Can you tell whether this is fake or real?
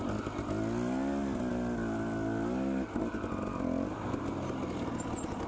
real